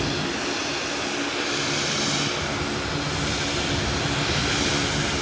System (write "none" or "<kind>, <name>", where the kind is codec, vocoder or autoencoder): none